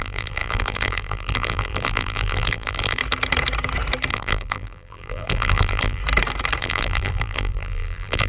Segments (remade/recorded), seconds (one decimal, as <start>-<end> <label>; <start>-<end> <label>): 0.0-3.0 remade; 3.0-4.1 recorded; 4.1-6.0 remade; 6.0-6.6 recorded; 6.6-8.3 remade